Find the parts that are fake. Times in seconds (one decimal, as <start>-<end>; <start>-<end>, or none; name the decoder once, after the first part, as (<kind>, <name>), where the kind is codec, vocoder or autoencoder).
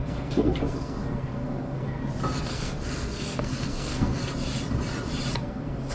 0.0-2.0 (codec, SNAC); 2.5-4.2; 5.4-5.9